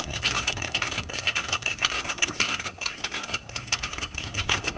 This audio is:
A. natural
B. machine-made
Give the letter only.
B